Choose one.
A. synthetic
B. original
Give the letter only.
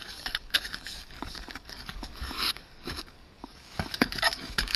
A